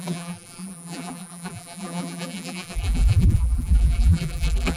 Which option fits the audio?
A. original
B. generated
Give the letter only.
B